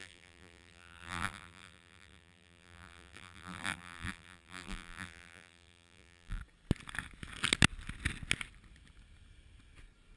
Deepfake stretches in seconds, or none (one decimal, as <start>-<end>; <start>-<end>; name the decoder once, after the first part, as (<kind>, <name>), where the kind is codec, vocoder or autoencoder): 0.0-6.4 (vocoder, BigVGAN v2)